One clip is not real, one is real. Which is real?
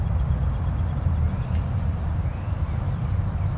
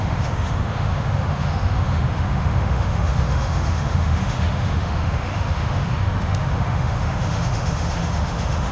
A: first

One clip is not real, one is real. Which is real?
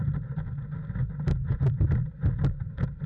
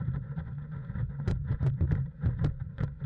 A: first